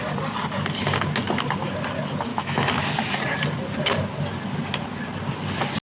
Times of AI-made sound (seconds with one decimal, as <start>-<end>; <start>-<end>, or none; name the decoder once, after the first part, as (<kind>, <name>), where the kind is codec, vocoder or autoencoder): 2.3-2.8 (autoencoder, DAC-VAE)